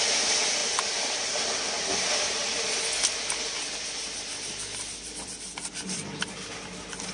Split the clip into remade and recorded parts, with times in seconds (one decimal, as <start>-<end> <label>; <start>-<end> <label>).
0.0-7.1 recorded